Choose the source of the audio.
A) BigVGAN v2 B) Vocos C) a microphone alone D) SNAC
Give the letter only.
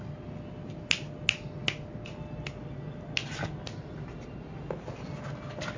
C